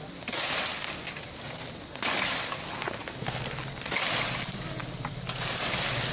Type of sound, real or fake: real